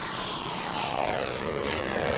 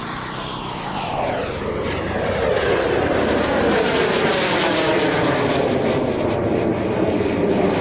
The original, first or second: second